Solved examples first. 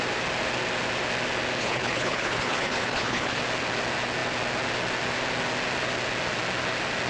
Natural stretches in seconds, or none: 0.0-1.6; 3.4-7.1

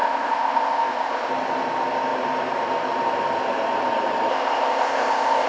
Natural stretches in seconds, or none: 1.3-4.3

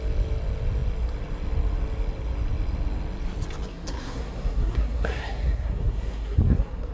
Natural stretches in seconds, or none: 0.0-3.7

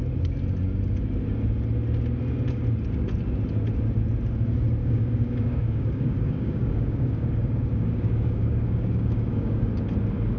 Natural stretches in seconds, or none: 0.0-4.8; 9.7-10.4

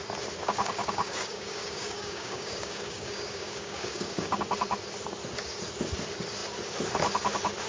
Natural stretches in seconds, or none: 0.0-0.4; 4.4-7.7

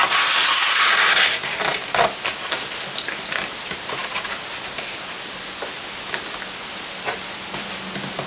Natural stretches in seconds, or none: 0.0-8.3